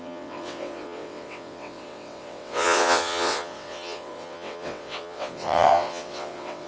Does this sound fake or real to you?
fake